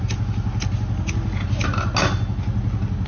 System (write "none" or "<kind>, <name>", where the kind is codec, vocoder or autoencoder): none